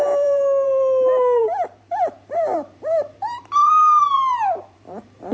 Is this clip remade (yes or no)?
yes